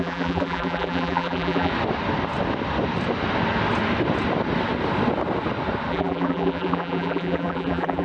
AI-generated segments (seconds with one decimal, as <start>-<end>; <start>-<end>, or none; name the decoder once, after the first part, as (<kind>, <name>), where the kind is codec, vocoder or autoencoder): 0.0-1.7 (vocoder, BigVGAN v2); 5.9-8.0